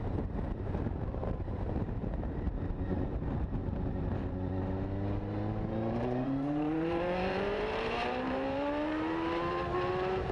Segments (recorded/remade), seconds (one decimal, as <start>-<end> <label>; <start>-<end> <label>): 0.0-3.6 remade; 3.6-5.9 recorded; 5.9-10.3 remade